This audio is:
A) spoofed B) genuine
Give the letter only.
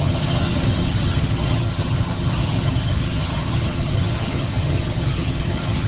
A